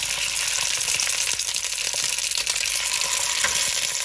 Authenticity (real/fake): real